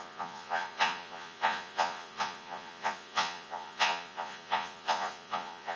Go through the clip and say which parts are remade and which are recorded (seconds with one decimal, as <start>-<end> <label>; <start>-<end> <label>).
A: 0.0-5.8 remade